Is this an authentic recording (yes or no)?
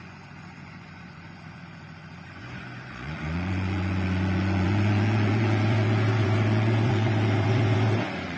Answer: no